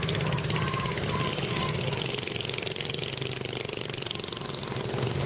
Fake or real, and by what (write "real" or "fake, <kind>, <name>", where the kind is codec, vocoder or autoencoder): real